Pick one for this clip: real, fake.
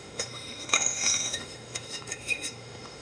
fake